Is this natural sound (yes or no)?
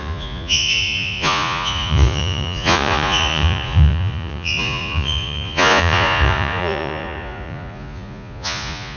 no